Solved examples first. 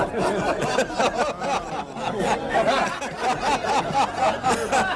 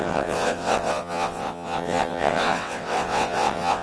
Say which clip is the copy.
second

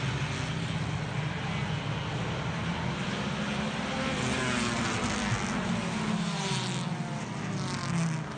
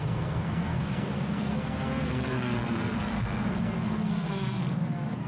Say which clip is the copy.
second